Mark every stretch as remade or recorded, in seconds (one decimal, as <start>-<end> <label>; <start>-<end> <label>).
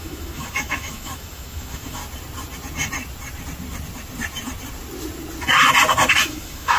0.0-2.0 remade; 2.0-6.1 recorded; 6.1-6.8 remade